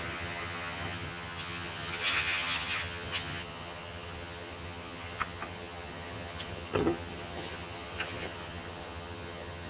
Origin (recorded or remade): remade